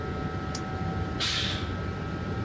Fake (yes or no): no